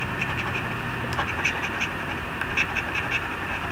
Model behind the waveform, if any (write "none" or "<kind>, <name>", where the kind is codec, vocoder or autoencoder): vocoder, BigVGAN v2